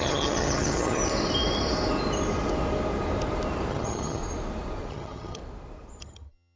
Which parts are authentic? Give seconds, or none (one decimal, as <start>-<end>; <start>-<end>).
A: 1.0-3.7; 4.2-4.9; 5.4-6.0